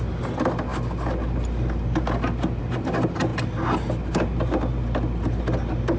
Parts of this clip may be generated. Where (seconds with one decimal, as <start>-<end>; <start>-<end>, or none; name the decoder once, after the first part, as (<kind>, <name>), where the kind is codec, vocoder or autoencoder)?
none